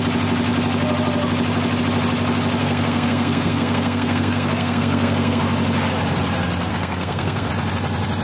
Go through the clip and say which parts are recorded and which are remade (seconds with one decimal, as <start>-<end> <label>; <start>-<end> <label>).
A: 0.0-2.6 recorded; 2.6-5.4 remade; 5.4-6.7 recorded; 6.7-7.5 remade; 7.5-8.2 recorded